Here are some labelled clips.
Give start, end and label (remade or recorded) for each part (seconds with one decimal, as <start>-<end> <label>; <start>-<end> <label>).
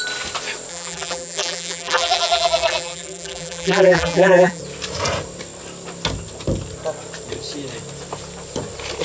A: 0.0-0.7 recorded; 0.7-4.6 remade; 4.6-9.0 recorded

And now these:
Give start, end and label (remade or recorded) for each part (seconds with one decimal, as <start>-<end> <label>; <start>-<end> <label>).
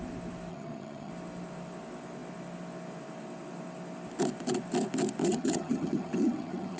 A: 0.0-0.5 recorded; 0.5-1.1 remade; 1.1-5.2 recorded; 5.2-6.8 remade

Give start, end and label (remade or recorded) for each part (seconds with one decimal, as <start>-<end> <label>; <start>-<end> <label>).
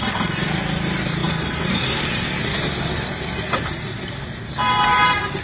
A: 0.0-5.4 recorded